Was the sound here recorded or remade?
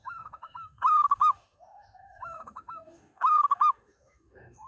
remade